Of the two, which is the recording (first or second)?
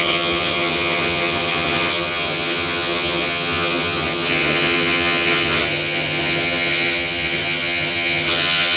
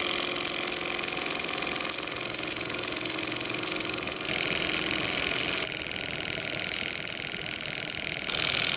second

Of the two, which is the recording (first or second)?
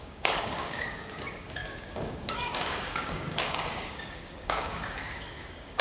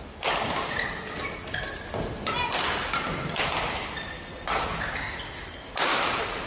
second